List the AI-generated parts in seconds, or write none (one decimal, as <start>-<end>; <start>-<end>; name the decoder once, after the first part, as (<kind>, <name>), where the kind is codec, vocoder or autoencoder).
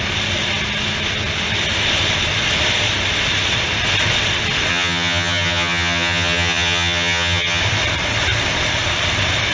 4.7-7.6 (vocoder, HiFi-GAN)